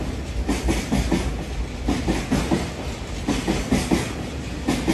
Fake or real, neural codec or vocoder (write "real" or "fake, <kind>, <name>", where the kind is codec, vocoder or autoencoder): real